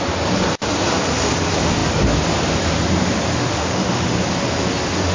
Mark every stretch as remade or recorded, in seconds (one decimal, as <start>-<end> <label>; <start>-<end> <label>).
0.0-3.3 recorded; 3.3-4.1 remade; 4.1-5.1 recorded